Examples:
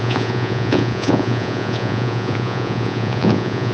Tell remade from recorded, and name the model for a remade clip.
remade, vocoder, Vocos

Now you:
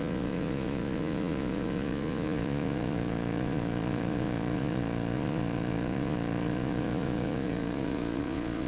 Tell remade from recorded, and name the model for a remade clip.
remade, vocoder, Vocos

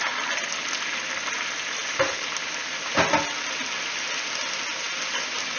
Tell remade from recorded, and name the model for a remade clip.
recorded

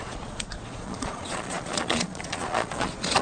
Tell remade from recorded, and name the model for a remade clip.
remade, vocoder, Vocos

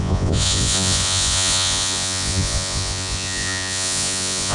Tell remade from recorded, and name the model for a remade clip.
remade, vocoder, Vocos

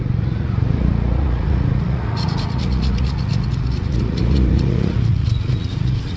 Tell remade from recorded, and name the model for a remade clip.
remade, vocoder, Vocos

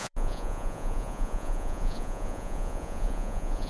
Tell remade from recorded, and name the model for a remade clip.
remade, vocoder, Vocos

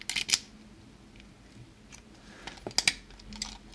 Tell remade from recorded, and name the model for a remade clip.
recorded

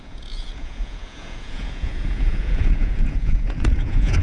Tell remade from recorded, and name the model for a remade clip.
remade, vocoder, Vocos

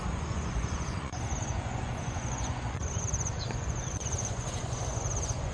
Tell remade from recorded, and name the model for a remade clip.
remade, vocoder, Vocos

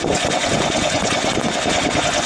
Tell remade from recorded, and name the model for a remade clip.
remade, vocoder, Vocos